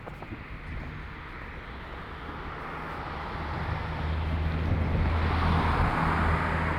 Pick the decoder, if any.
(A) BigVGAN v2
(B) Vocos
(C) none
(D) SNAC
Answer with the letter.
C